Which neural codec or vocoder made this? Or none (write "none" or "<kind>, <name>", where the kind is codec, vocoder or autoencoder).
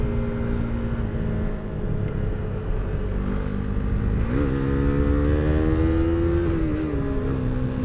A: none